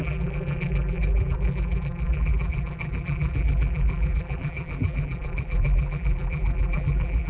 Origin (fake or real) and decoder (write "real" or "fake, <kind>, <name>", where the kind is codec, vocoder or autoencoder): fake, vocoder, BigVGAN v2